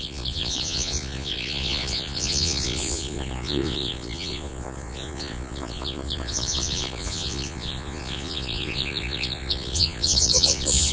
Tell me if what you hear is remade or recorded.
remade